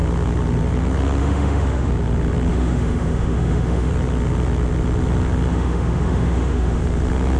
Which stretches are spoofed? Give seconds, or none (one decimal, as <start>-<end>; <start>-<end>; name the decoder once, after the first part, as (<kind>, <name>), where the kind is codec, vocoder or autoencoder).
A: 1.2-1.9 (autoencoder, DAC-VAE); 2.5-3.9; 5.5-6.8